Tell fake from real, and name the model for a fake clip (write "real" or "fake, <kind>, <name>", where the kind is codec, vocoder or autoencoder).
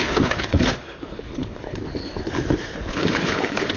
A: fake, codec, HILCodec